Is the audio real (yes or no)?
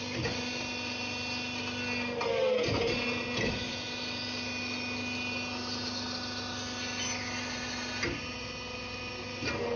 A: yes